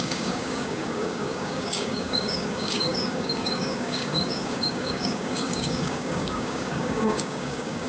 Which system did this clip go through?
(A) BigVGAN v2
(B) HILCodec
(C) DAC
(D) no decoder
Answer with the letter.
C